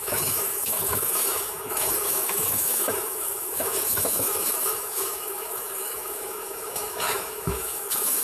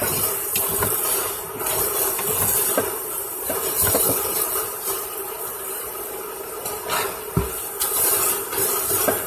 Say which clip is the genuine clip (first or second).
second